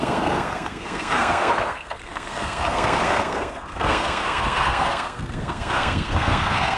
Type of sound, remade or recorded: remade